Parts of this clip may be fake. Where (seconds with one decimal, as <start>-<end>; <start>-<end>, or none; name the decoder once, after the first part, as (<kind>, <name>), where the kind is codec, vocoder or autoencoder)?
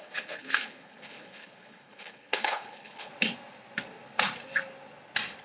0.0-3.1 (codec, HILCodec)